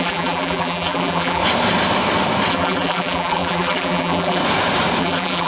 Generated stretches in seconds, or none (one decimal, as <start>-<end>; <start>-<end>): 0.0-1.4; 2.5-4.4; 5.0-5.5